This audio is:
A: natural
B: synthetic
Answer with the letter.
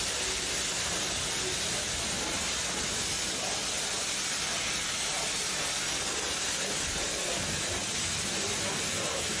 A